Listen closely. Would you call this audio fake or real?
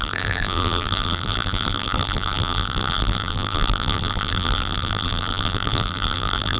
fake